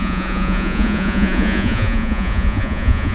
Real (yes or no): no